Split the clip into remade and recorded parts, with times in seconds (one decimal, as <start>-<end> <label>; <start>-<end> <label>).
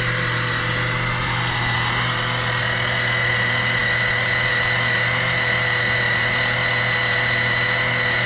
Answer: 0.0-8.3 recorded